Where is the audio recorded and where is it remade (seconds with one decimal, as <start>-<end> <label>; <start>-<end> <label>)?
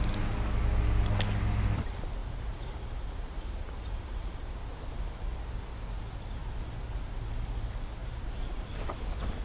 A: 0.0-2.2 recorded; 2.2-4.8 remade; 4.8-6.4 recorded; 6.4-7.2 remade; 7.2-8.0 recorded; 8.0-8.8 remade; 8.8-9.4 recorded